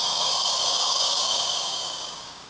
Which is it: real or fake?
fake